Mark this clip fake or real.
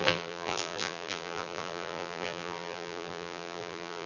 fake